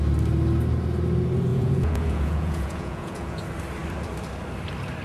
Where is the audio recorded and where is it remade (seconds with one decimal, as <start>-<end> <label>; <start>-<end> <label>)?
0.0-1.5 recorded; 1.5-3.4 remade; 3.4-5.0 recorded